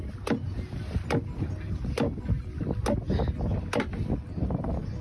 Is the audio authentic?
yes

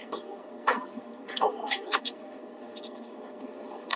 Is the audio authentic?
no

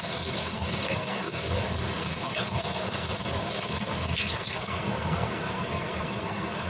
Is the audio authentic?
no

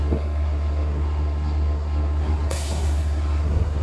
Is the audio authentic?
no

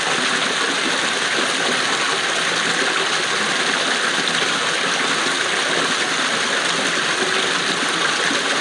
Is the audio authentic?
yes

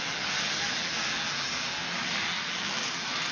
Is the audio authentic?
yes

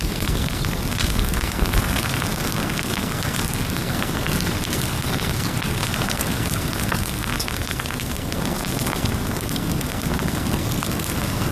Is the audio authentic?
no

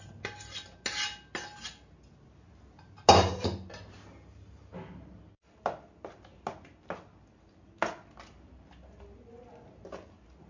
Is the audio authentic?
yes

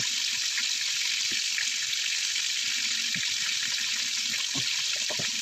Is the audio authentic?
yes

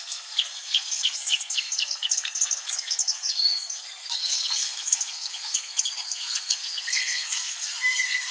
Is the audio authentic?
no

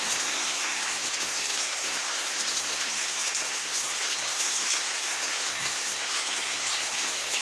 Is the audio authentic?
no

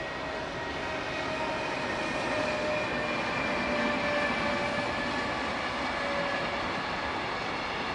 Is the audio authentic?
yes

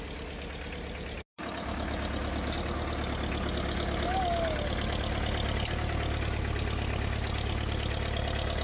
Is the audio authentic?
yes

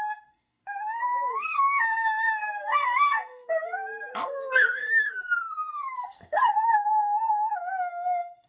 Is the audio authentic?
no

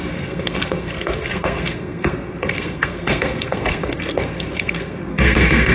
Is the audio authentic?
no